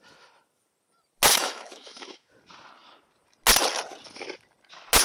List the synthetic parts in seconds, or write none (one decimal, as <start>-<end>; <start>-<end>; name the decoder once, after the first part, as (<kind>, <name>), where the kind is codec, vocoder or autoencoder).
1.3-2.3 (autoencoder, DAC-VAE)